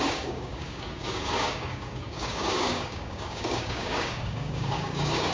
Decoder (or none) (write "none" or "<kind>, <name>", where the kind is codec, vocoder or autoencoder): codec, DAC